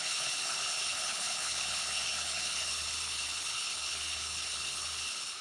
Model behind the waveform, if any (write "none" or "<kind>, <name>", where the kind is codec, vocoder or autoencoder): codec, HILCodec